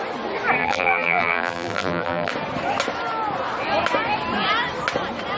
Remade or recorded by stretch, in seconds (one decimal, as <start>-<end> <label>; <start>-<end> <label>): 0.0-0.6 recorded; 0.6-2.3 remade; 2.3-5.4 recorded